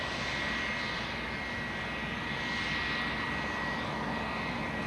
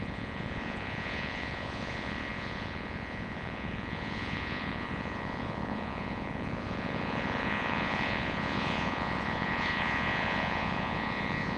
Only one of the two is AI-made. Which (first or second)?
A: second